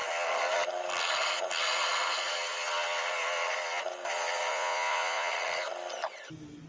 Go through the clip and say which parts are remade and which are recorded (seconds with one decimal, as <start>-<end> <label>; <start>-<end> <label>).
0.0-4.5 recorded; 4.5-5.3 remade; 5.3-6.7 recorded